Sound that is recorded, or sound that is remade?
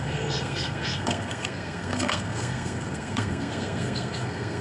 remade